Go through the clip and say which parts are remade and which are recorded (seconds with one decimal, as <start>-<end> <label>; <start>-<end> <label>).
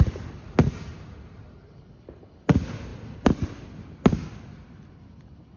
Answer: 0.0-5.6 recorded